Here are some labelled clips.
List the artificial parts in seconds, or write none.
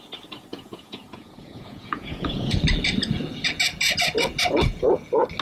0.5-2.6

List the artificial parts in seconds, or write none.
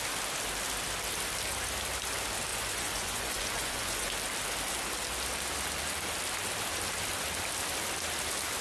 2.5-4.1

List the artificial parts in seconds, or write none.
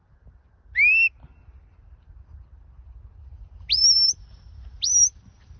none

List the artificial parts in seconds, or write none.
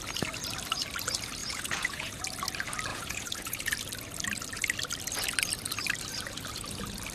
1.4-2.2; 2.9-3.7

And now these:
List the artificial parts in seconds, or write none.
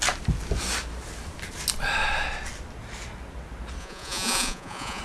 3.8-5.0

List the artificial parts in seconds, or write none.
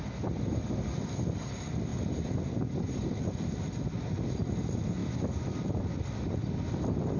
none